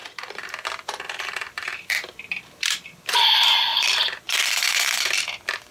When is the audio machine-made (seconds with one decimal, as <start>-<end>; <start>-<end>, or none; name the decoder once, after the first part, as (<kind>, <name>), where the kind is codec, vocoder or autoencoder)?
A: 0.0-2.9 (vocoder, BigVGAN v2); 3.7-5.2